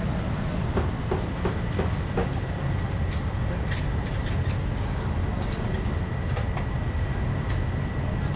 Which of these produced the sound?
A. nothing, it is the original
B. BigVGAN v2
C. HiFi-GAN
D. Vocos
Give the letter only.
A